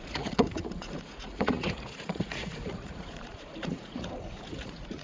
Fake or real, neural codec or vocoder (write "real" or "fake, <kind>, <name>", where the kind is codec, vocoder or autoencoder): fake, vocoder, Vocos